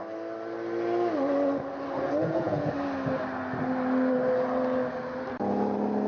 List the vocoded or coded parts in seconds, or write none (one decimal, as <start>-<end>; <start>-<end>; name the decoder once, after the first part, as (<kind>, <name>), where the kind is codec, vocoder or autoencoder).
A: 2.2-2.7 (vocoder, Vocos)